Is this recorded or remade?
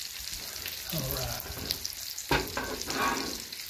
recorded